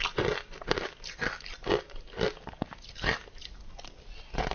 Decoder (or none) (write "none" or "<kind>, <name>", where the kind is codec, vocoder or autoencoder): none